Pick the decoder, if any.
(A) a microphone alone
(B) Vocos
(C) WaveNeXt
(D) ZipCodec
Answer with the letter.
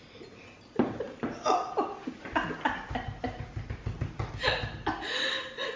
A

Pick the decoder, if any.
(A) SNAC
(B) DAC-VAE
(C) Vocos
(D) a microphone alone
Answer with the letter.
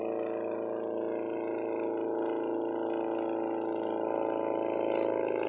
D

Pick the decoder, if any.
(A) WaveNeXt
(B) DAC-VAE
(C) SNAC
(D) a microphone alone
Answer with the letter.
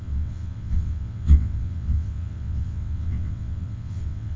A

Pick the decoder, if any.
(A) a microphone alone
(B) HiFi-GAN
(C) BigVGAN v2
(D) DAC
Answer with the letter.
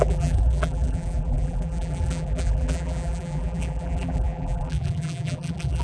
C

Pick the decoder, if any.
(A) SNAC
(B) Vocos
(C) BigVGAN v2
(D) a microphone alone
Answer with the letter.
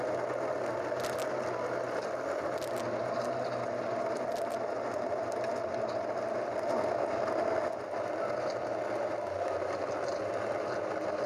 D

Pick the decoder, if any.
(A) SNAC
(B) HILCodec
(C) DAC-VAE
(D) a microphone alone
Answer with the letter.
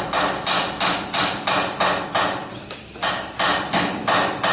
D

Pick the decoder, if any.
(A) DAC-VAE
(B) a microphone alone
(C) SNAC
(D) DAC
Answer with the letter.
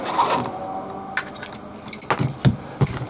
B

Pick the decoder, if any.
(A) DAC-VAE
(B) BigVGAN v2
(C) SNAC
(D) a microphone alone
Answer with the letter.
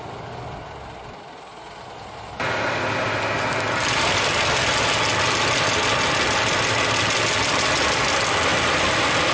D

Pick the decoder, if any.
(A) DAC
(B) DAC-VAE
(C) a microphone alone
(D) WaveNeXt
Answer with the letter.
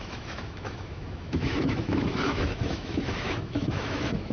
B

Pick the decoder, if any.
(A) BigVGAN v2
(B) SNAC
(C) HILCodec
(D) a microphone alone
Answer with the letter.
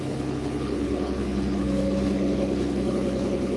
C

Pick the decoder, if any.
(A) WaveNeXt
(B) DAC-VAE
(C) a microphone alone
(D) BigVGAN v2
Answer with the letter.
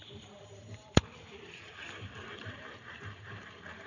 D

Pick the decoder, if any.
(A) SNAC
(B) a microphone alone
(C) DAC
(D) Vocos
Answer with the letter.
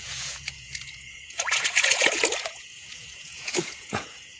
D